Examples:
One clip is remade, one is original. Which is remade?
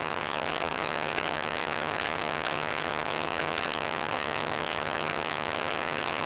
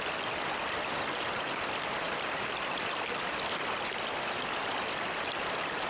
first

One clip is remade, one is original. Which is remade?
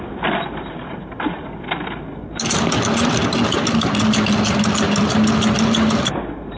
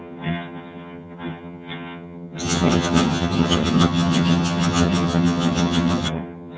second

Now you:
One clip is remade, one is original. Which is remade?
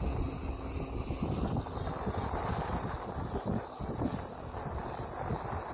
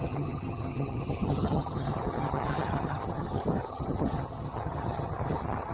second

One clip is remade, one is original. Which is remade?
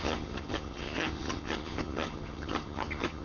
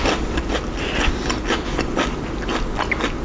first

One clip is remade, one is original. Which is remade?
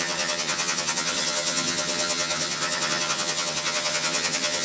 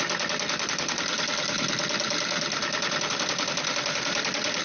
first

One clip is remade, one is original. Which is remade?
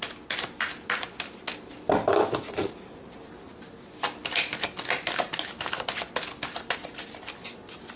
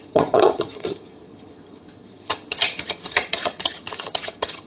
second